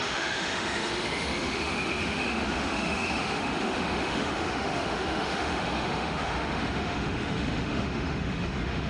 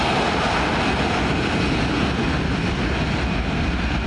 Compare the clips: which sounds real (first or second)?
second